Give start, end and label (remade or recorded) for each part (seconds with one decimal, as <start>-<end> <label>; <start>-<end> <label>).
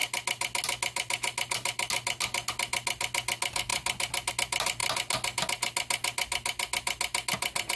0.0-7.8 recorded